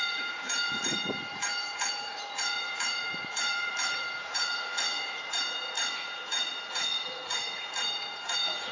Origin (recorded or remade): remade